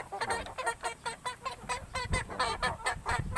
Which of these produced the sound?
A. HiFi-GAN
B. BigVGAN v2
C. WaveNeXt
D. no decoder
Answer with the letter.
D